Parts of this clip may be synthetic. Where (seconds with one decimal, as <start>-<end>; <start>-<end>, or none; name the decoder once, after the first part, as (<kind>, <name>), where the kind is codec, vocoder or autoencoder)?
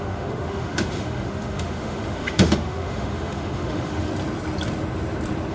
0.0-4.1 (autoencoder, DAC-VAE)